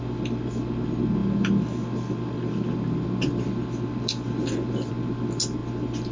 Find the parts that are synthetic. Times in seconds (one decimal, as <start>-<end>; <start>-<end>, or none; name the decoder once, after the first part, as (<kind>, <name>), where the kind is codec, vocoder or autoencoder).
none